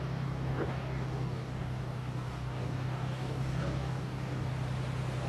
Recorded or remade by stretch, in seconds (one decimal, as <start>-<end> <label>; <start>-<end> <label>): 0.0-4.5 remade; 4.5-5.3 recorded